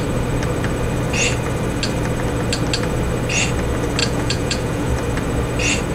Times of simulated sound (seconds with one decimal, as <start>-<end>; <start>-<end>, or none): 4.0-4.9